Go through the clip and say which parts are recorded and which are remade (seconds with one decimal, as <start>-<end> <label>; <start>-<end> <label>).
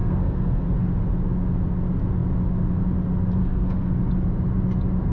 0.0-0.7 remade; 0.7-3.4 recorded; 3.4-3.9 remade; 3.9-5.1 recorded